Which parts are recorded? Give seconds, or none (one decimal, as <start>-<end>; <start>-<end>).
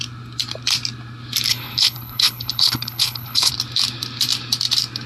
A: 0.0-1.5; 3.5-5.1